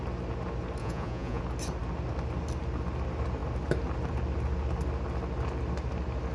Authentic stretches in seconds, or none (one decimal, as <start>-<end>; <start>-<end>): 0.0-0.8; 1.4-6.3